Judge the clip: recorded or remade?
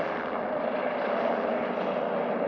recorded